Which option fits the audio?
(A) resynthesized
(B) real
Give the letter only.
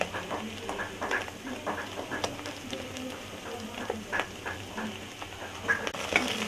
B